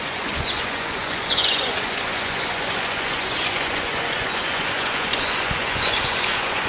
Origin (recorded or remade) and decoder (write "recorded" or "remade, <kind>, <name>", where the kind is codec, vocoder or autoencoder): remade, vocoder, Vocos